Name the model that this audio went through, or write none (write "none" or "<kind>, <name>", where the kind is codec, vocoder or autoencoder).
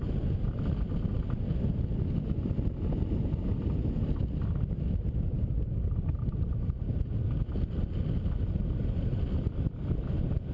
none